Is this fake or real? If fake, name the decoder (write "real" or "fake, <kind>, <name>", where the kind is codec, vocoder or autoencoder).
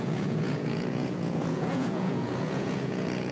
fake, vocoder, Vocos